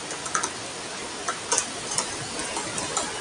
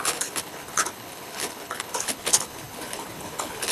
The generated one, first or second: second